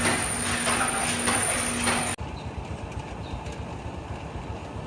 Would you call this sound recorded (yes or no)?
yes